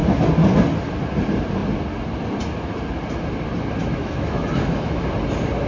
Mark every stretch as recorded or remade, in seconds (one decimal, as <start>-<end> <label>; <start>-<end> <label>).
0.0-3.8 recorded; 3.8-5.0 remade; 5.0-5.7 recorded